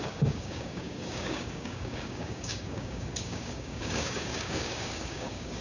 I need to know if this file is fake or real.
fake